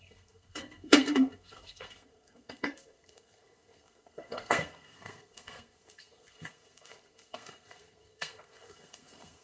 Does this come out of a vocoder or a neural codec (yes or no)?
yes